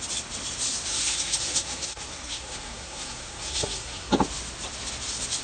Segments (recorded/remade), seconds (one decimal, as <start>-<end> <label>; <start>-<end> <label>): 0.0-0.9 recorded; 0.9-4.1 remade; 4.1-5.4 recorded